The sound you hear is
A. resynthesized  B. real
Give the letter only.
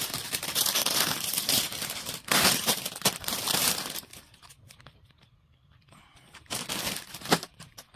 A